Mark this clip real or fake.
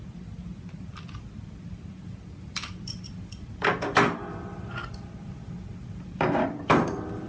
real